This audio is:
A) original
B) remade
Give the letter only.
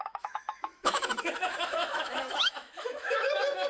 B